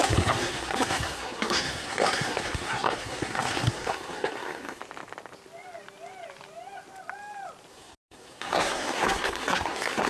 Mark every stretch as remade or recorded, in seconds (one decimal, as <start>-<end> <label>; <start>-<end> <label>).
0.0-4.8 remade; 4.8-7.7 recorded; 7.7-10.1 remade